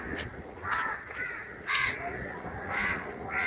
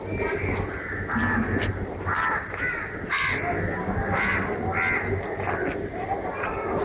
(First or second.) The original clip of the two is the second